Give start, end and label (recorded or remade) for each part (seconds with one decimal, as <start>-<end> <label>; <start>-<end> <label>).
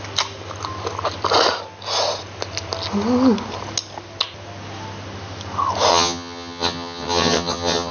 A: 0.0-5.9 recorded; 5.9-7.9 remade